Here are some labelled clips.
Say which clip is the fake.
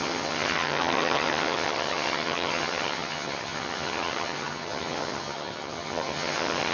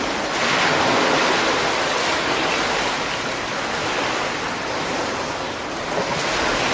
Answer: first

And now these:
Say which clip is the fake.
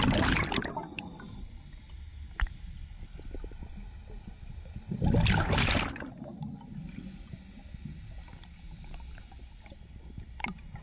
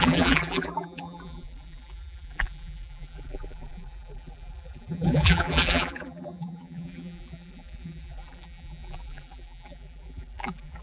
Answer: second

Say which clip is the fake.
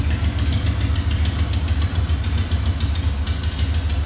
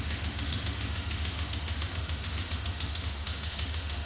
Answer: second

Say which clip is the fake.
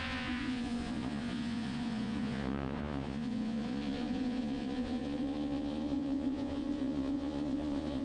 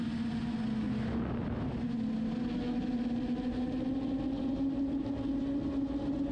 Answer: first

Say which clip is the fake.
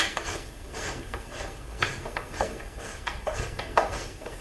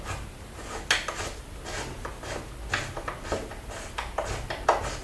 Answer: first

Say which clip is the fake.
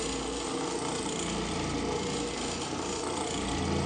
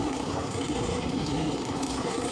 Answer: second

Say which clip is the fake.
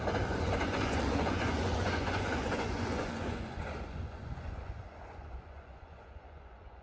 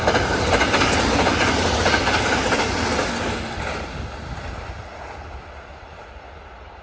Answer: first